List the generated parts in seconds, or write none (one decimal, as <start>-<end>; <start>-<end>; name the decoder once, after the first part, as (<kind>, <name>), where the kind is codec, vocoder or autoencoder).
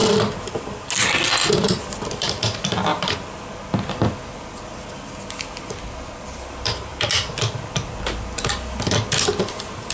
none